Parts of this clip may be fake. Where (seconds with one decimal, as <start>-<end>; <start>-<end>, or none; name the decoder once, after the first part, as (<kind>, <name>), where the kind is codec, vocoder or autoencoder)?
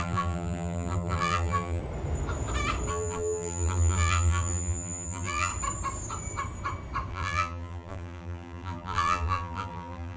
0.0-1.8 (vocoder, BigVGAN v2); 2.9-5.5; 7.1-10.2